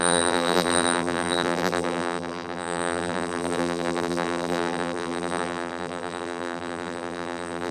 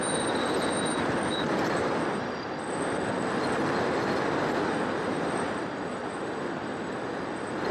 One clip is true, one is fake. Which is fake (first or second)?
first